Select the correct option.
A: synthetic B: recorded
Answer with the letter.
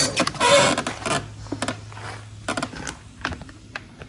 B